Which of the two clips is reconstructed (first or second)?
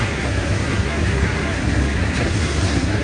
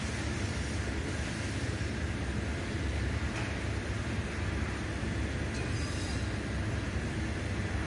first